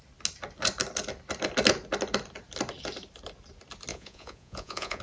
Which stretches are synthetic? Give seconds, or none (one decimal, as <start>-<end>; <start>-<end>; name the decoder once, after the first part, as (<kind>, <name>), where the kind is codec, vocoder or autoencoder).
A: 3.9-5.0 (vocoder, Vocos)